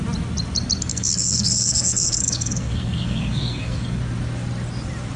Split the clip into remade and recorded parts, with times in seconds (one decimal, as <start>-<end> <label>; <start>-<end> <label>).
0.0-0.9 recorded; 0.9-4.0 remade; 4.0-5.2 recorded